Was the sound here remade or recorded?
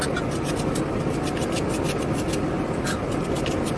recorded